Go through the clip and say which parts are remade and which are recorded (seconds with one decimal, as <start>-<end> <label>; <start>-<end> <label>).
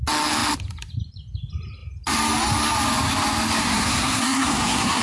0.0-3.6 recorded; 3.6-5.0 remade